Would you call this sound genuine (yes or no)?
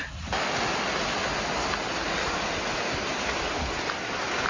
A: yes